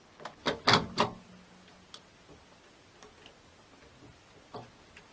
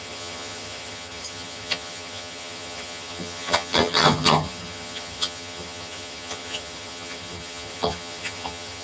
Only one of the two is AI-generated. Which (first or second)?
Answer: second